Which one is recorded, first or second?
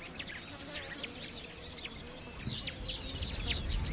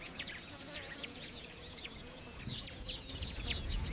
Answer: first